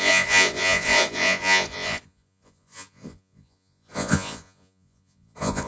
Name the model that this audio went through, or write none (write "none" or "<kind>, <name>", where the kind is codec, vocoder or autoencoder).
vocoder, Vocos